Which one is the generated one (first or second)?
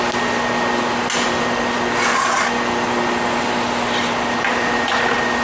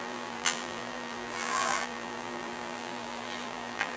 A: second